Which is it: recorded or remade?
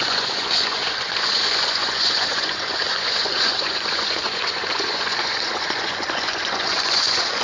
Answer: remade